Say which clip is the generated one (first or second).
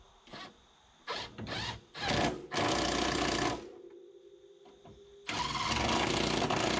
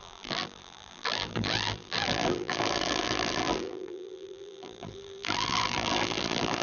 second